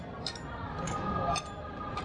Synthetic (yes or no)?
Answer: no